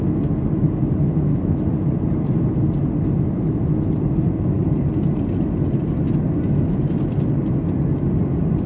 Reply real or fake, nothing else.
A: real